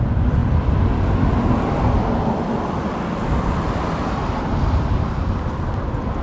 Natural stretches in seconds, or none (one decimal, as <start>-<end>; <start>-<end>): 0.4-4.1